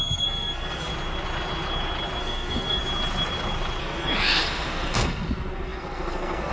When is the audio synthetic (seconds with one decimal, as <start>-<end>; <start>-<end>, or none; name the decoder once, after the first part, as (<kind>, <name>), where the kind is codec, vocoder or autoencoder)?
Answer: 0.0-0.9 (codec, SNAC); 2.2-2.8; 3.8-6.5